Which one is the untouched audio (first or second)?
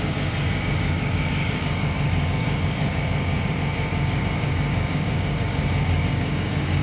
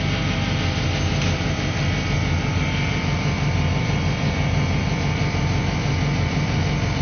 second